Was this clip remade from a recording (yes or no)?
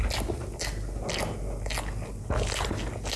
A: no